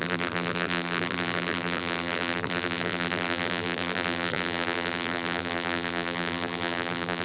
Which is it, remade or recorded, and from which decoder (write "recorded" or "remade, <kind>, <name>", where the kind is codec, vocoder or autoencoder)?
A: remade, vocoder, BigVGAN v2